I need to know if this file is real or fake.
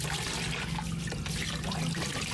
real